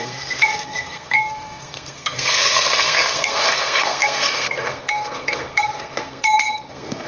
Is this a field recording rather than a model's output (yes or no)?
no